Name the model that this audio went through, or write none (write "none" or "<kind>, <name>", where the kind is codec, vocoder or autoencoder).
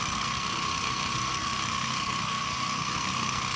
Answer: codec, SNAC